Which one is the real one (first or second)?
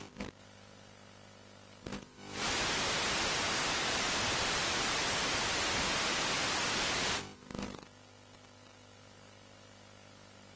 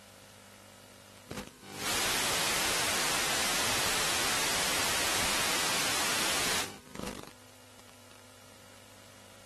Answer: first